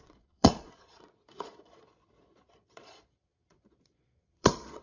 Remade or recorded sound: remade